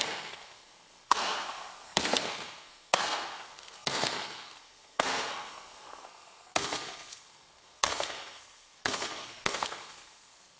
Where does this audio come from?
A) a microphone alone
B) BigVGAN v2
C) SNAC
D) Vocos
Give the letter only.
C